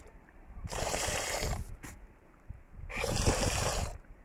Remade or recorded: remade